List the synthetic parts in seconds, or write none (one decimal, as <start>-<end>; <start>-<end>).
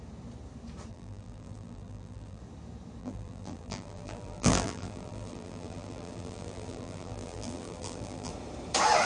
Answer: 0.9-2.4; 3.0-8.3